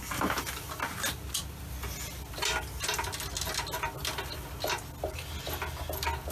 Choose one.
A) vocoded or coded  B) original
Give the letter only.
B